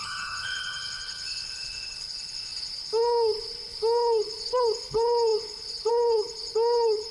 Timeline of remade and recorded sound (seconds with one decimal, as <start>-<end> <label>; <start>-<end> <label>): 0.0-7.1 remade